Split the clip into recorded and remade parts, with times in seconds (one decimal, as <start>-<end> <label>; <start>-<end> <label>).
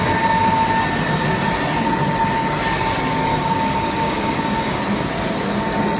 0.0-3.3 recorded; 3.3-4.8 remade; 4.8-6.0 recorded